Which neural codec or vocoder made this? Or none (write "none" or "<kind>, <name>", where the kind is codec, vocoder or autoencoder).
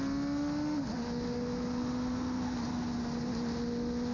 none